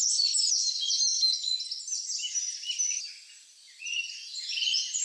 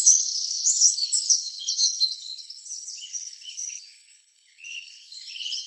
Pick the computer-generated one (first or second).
second